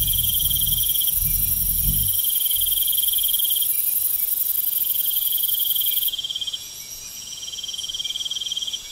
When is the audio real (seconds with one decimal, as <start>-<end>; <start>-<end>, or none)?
2.0-4.8